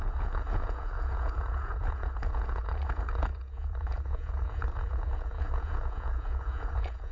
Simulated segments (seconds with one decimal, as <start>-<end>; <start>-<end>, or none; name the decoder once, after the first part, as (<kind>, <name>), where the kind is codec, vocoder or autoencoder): 0.0-7.1 (vocoder, Vocos)